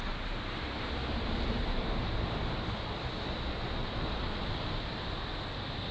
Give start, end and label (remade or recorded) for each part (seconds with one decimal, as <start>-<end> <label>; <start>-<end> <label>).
0.0-1.0 recorded; 1.0-3.2 remade; 3.2-3.8 recorded; 3.8-4.5 remade; 4.5-5.9 recorded